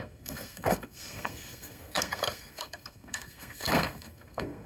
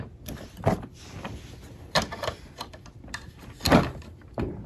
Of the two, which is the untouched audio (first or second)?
second